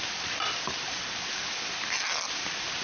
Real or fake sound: real